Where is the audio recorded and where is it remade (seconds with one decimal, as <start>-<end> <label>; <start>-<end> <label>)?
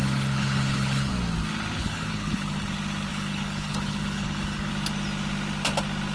0.0-1.1 remade; 1.1-1.8 recorded; 1.8-2.7 remade; 2.7-3.1 recorded; 3.1-4.7 remade; 4.7-6.1 recorded